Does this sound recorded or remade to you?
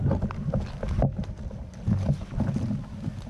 recorded